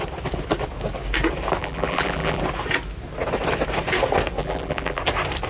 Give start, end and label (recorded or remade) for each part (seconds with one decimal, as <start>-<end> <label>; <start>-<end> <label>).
0.0-1.6 recorded; 1.6-2.4 remade; 2.4-4.4 recorded; 4.4-5.0 remade; 5.0-5.5 recorded